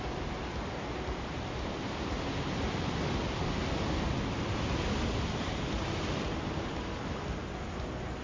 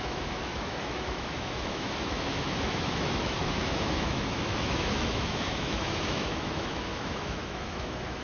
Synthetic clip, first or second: second